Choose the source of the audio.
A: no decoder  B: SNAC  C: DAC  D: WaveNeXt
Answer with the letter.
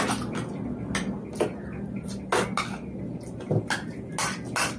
A